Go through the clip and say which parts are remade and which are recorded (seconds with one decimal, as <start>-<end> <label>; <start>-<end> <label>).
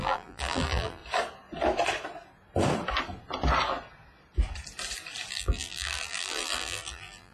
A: 0.0-1.0 remade; 1.0-5.3 recorded; 5.3-7.3 remade